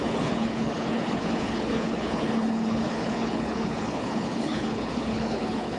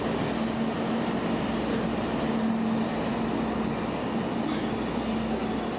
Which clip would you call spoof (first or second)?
first